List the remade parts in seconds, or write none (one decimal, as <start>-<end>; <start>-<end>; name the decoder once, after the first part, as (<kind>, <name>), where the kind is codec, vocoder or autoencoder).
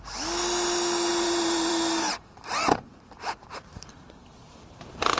1.1-2.3 (vocoder, BigVGAN v2); 3.4-4.8